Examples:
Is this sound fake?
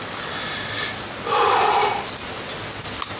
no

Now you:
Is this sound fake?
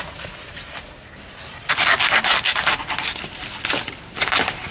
no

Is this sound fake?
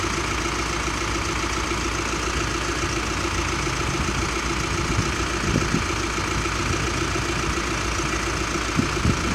no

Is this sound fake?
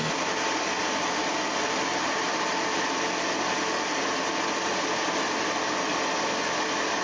yes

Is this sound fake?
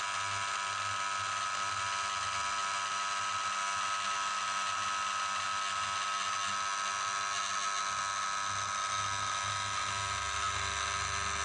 no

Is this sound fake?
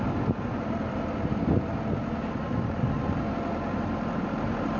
yes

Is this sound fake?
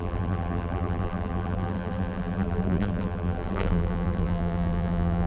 yes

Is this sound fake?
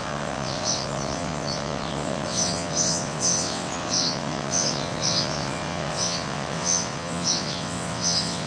yes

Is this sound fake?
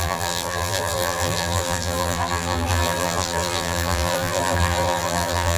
yes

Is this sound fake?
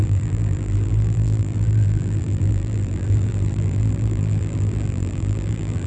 yes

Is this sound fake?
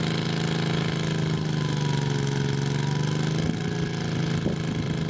no